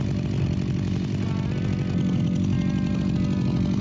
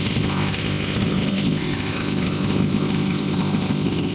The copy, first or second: second